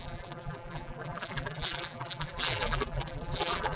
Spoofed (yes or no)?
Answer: yes